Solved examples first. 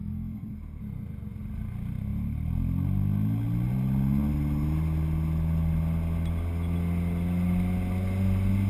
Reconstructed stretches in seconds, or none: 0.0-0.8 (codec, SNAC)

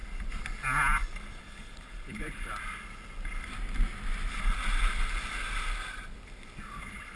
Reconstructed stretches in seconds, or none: 1.4-2.5 (codec, HILCodec); 6.8-7.2

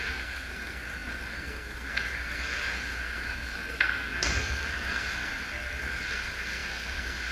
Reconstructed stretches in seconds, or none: 0.0-7.3 (codec, SNAC)

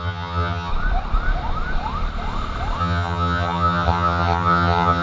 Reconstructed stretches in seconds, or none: 0.0-0.7 (vocoder, HiFi-GAN); 2.8-5.0

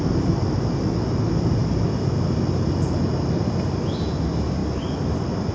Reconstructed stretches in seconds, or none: none

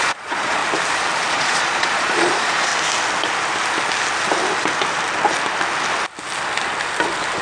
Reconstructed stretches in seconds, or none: 0.0-0.6 (vocoder, Vocos); 1.3-2.7

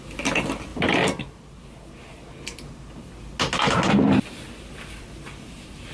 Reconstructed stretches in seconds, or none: none